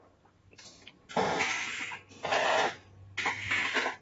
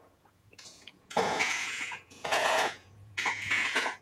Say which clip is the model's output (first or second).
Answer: second